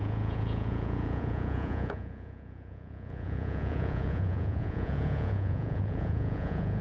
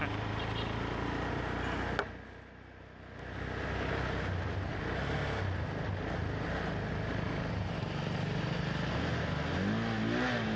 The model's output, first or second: first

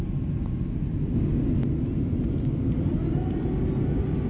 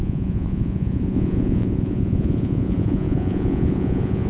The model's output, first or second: second